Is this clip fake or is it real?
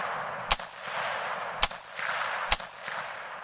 real